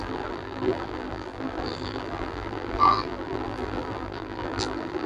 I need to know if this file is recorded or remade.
remade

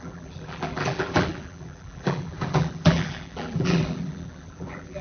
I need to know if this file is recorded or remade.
remade